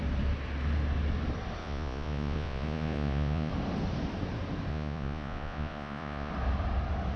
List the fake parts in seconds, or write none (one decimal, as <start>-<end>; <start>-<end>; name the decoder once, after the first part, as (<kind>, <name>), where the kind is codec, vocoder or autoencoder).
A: 1.6-3.5 (vocoder, Vocos); 4.7-6.3